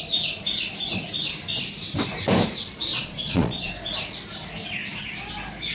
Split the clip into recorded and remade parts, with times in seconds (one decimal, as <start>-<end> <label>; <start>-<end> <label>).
0.0-2.9 recorded; 2.9-3.7 remade; 3.7-5.7 recorded